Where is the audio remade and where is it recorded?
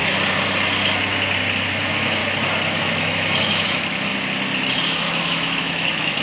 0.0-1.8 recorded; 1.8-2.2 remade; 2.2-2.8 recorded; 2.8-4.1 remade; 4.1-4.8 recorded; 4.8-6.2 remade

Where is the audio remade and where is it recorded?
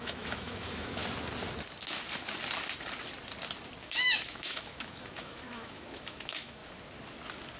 0.0-1.0 remade; 1.0-3.8 recorded; 3.8-6.6 remade; 6.6-7.6 recorded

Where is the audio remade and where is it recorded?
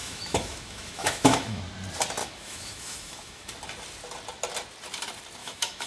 0.0-1.6 remade; 1.6-2.2 recorded; 2.2-3.5 remade; 3.5-5.4 recorded; 5.4-5.9 remade